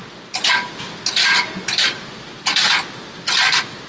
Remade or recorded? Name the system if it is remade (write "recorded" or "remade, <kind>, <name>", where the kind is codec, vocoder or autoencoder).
recorded